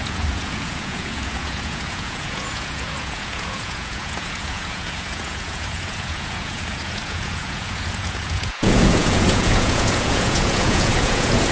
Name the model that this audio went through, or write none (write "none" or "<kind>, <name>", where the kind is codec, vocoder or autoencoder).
vocoder, Vocos